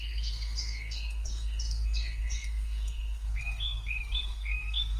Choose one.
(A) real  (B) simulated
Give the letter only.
B